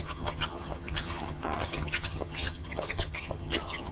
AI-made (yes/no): yes